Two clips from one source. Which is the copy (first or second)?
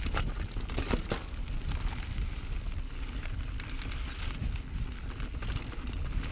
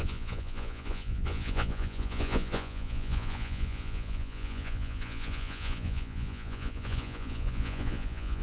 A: second